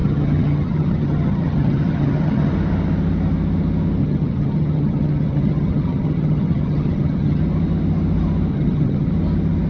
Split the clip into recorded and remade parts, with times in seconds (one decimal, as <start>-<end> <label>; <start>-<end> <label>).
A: 0.0-2.5 remade; 2.5-4.0 recorded; 4.0-7.4 remade; 7.4-8.5 recorded; 8.5-9.1 remade; 9.1-9.7 recorded